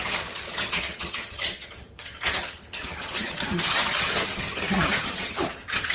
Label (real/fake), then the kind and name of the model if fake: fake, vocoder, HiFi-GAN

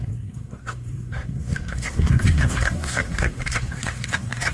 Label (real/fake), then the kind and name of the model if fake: fake, codec, SNAC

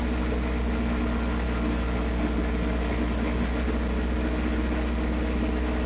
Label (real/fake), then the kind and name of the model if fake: real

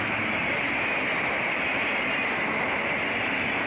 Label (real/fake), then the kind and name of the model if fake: real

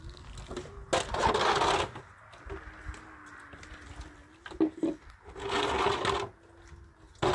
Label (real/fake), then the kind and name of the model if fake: real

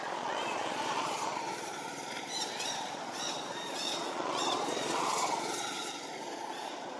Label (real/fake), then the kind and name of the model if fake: fake, vocoder, Vocos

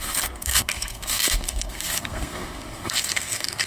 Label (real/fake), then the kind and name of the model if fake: fake, codec, SNAC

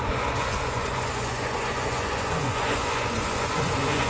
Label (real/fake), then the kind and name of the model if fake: fake, vocoder, Vocos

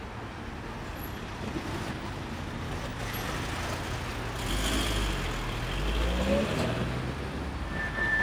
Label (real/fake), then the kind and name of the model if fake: real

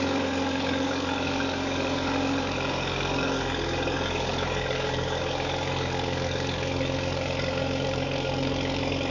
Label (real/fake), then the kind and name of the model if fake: fake, codec, DAC